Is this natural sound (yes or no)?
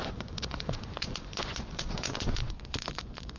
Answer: no